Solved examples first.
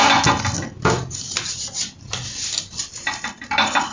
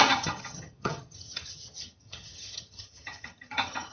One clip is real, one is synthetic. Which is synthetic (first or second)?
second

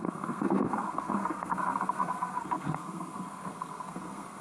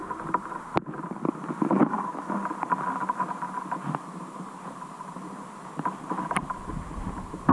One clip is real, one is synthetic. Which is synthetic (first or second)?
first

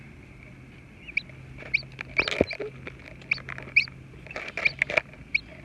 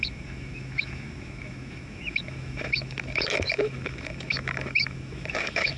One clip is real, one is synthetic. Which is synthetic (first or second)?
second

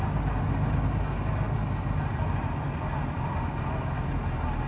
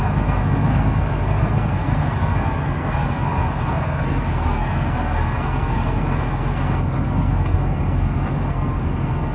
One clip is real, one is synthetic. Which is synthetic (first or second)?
second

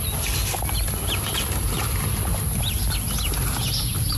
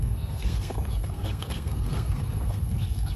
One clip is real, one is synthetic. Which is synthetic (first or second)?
second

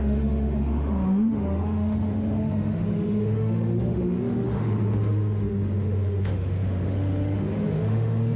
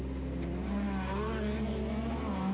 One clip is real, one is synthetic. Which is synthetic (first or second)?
first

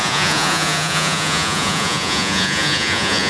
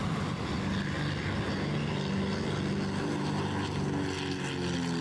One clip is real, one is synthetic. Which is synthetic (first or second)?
first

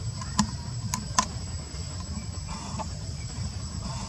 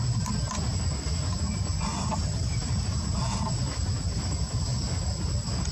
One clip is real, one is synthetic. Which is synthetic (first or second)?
first